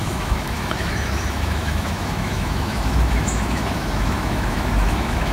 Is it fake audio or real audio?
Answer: fake